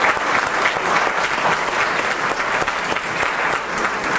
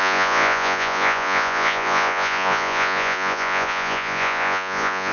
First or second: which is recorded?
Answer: first